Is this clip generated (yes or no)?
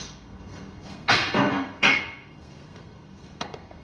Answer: yes